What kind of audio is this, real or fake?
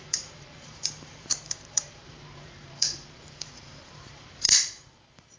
fake